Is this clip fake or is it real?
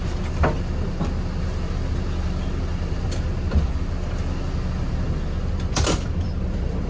real